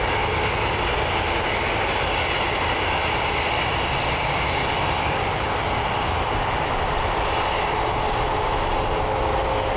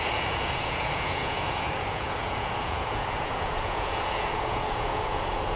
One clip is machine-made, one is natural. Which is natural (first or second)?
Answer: first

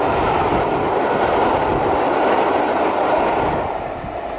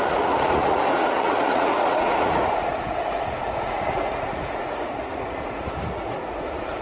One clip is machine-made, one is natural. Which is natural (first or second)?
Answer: first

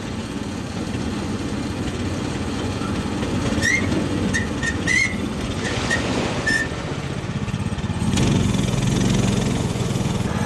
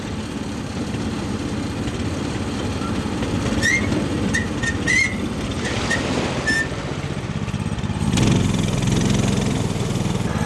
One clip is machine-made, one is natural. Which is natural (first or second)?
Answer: second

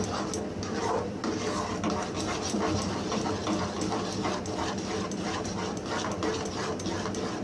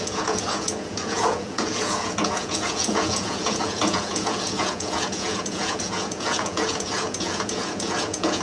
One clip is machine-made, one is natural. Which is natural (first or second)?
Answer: first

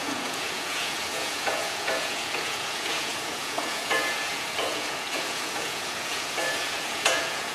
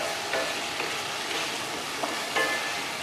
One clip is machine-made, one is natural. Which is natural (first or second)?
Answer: second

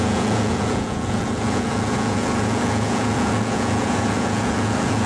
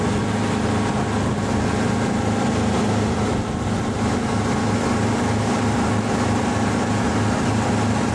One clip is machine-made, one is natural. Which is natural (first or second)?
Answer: second